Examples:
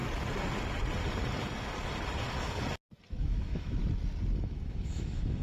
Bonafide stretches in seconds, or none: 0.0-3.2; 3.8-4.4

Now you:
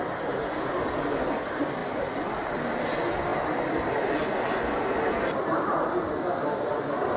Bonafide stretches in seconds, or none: 0.0-7.2

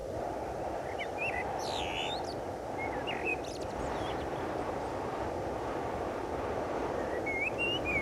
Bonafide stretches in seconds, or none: 0.0-8.0

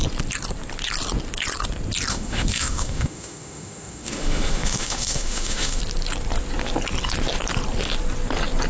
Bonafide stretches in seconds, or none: 0.0-2.1; 5.8-8.7